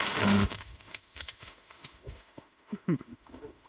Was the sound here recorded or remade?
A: remade